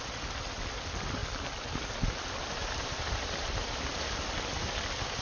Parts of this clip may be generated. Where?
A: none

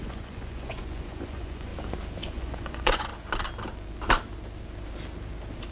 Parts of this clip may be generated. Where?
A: 0.0-1.7; 2.3-3.1

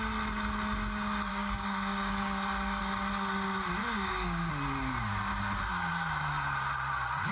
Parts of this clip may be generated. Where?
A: 1.3-2.8; 3.8-4.5

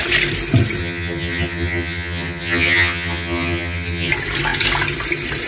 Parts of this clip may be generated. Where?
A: 0.8-4.1

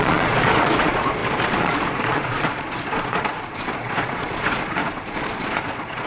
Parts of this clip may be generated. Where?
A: 0.0-6.1

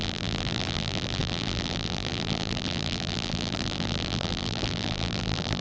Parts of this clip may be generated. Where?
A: 0.0-5.6

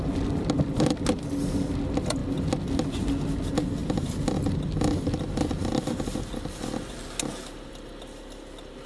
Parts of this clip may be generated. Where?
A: none

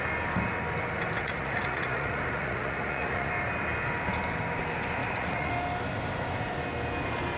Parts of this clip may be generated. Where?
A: 1.2-3.3; 5.0-5.5